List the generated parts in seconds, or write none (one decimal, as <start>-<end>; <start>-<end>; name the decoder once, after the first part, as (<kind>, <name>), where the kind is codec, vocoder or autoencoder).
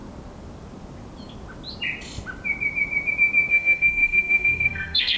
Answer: 3.5-5.2 (codec, SNAC)